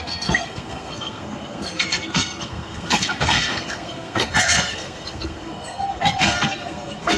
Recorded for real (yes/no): no